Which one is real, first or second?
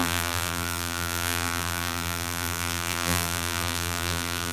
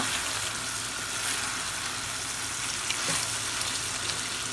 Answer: second